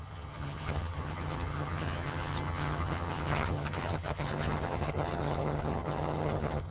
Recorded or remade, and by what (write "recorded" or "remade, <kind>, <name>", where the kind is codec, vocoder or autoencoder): remade, vocoder, HiFi-GAN